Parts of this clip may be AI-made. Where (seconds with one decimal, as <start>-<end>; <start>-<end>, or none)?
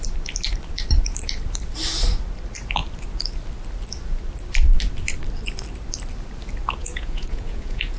6.8-8.0